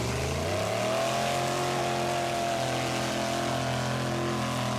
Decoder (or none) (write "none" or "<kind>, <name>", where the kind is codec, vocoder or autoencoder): none